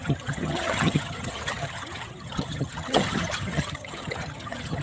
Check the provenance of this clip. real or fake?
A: fake